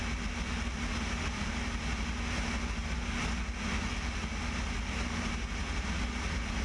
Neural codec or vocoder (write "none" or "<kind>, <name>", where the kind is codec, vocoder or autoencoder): none